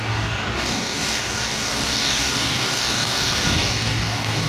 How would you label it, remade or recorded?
remade